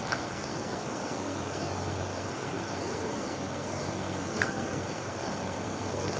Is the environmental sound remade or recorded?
remade